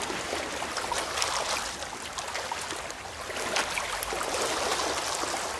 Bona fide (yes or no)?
yes